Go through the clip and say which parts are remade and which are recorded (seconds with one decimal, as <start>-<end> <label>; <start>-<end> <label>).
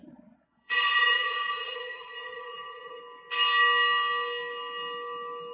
0.0-3.0 remade; 3.0-5.5 recorded